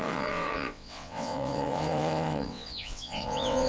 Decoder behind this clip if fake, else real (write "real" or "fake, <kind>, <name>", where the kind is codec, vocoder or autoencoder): fake, vocoder, WaveNeXt